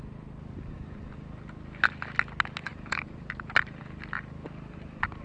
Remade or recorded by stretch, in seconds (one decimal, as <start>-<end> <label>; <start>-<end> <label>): 0.0-2.7 recorded; 2.7-3.8 remade; 3.8-5.2 recorded